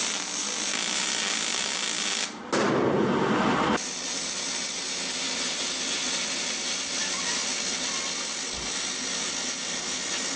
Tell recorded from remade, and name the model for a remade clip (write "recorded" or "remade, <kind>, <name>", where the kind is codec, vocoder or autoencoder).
recorded